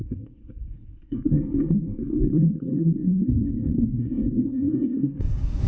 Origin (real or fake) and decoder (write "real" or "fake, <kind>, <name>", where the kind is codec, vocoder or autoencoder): fake, codec, SNAC